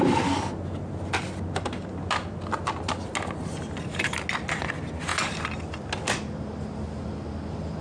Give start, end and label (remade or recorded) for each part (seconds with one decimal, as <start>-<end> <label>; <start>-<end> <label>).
0.0-7.8 recorded